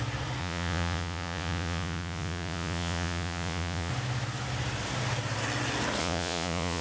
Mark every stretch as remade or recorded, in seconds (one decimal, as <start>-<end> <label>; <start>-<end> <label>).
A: 0.0-0.4 recorded; 0.4-3.9 remade; 3.9-6.0 recorded; 6.0-6.8 remade